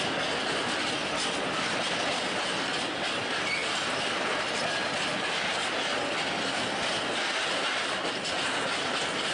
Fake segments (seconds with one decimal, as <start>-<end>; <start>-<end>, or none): none